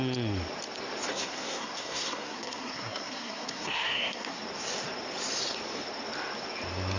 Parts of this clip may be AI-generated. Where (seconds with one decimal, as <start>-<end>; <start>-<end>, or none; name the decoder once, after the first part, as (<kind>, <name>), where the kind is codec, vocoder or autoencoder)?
1.1-4.4 (codec, SNAC)